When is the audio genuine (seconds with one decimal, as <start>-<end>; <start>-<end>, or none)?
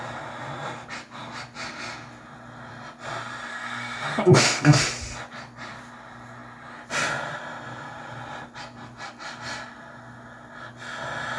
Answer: 0.0-3.5; 4.8-11.4